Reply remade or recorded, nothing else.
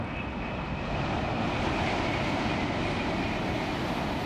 recorded